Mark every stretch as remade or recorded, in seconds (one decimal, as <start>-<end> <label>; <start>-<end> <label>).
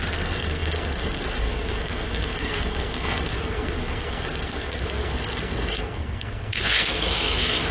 0.0-7.7 remade